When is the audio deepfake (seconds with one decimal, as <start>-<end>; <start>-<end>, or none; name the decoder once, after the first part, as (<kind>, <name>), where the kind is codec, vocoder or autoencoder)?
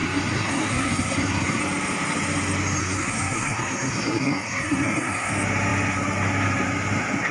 0.0-1.6 (codec, SNAC); 2.8-5.3